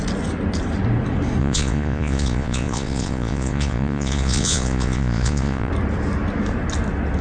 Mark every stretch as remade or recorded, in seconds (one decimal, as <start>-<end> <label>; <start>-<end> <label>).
0.0-1.4 recorded; 1.4-5.7 remade; 5.7-7.2 recorded